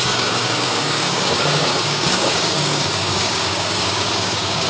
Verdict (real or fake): fake